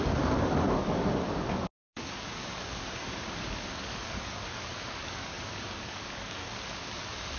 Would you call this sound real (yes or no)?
no